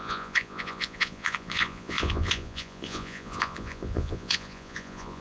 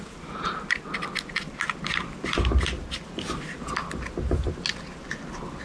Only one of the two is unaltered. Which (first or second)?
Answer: second